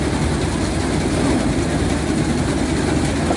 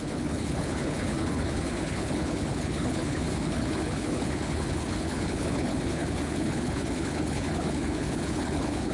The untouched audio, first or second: first